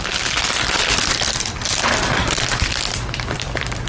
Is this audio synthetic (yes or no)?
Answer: yes